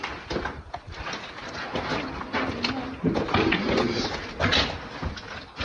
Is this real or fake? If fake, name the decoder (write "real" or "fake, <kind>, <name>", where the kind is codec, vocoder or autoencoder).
real